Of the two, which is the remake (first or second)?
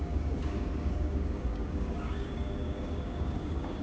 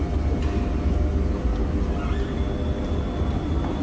first